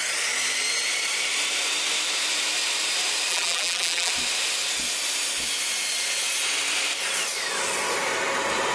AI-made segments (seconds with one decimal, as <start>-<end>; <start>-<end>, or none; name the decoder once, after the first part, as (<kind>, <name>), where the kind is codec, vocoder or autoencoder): 3.3-4.1 (vocoder, BigVGAN v2)